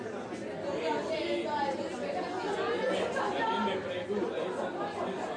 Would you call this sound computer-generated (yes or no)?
no